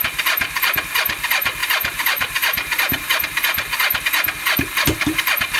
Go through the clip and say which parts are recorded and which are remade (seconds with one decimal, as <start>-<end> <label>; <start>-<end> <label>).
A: 0.0-1.6 recorded; 1.6-4.0 remade; 4.0-5.6 recorded